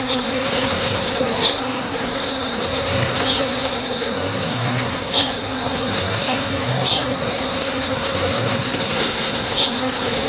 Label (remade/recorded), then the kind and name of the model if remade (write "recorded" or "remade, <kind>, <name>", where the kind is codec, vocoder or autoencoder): remade, codec, SNAC